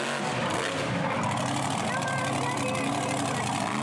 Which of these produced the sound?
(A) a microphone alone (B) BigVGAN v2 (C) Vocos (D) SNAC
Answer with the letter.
A